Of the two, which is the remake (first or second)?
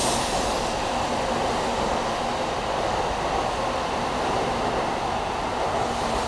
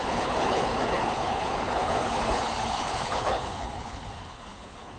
second